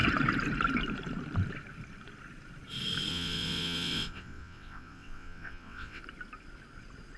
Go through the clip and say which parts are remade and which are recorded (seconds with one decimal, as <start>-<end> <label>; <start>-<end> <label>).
0.0-3.1 recorded; 3.1-6.0 remade; 6.0-7.2 recorded